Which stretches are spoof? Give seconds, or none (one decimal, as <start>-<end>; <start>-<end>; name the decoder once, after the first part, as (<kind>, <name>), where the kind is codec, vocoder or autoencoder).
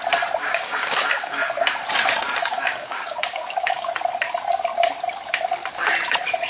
0.4-1.5 (codec, DAC); 2.4-3.9